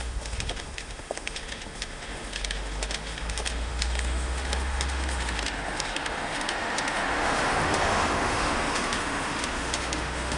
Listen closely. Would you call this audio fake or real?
fake